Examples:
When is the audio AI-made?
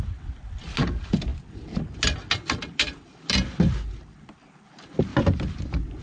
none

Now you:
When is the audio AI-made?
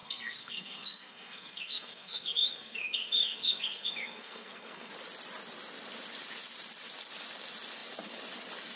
0.0-4.9 (codec, SNAC)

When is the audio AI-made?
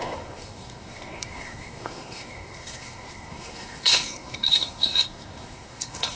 0.0-6.2 (codec, SNAC)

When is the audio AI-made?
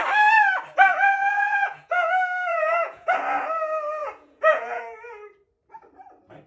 0.9-2.1 (vocoder, Vocos); 2.5-3.1; 4.0-4.8